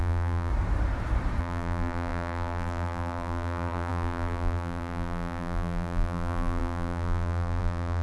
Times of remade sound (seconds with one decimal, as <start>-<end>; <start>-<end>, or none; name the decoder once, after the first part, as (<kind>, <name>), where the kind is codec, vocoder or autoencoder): 0.0-0.5 (vocoder, BigVGAN v2); 1.4-8.0